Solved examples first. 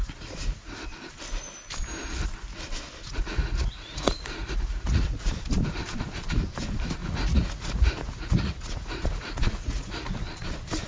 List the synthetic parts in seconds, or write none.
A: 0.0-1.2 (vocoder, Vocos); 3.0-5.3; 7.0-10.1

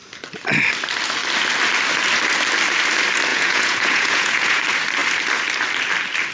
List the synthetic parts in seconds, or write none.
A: 3.3-4.6 (vocoder, Vocos)

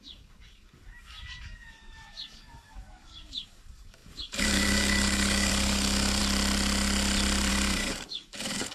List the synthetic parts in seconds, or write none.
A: 0.0-6.2 (codec, DAC); 7.5-8.7